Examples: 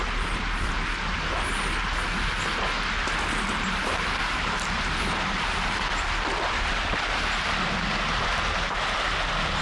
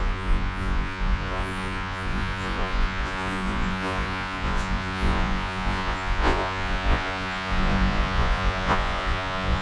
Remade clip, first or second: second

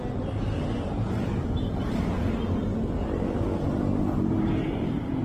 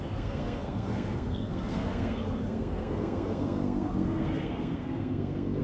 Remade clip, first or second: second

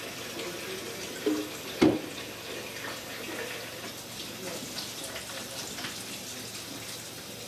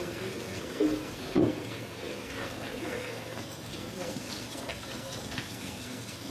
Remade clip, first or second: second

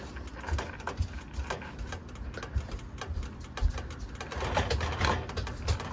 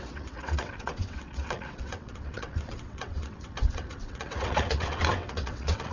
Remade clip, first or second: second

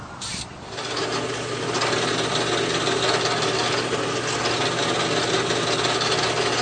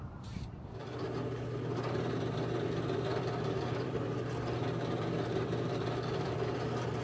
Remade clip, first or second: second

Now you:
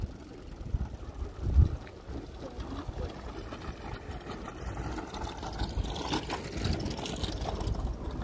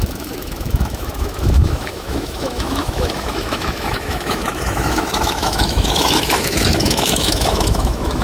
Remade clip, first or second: second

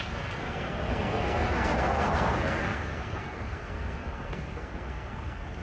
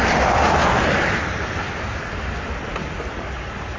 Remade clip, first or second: first